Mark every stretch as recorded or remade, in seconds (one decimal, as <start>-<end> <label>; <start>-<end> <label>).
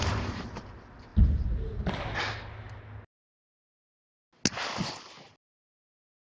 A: 0.0-6.3 recorded